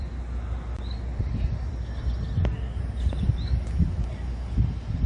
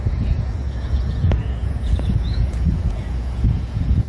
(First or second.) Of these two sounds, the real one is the first